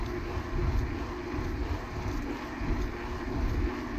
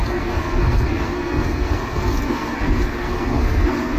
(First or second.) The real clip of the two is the first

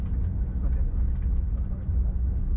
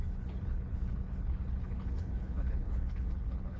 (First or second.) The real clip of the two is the first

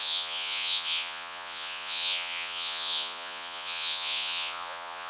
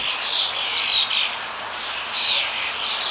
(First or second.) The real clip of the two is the second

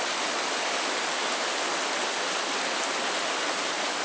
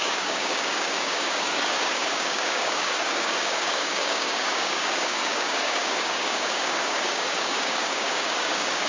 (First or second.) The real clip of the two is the first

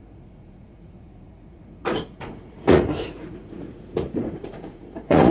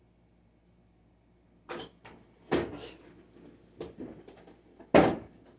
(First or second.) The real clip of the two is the second